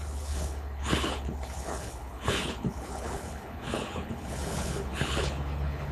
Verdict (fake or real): fake